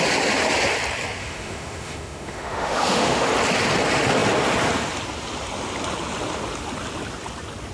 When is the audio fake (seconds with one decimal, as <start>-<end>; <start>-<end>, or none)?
1.2-3.3